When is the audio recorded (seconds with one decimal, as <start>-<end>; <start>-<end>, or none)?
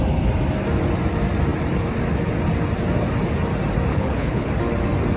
0.0-3.9; 4.5-5.2